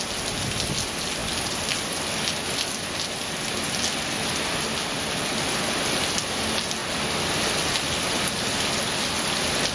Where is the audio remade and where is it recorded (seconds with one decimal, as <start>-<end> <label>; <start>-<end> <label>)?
0.0-9.7 recorded